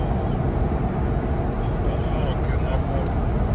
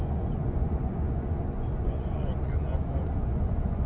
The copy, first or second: second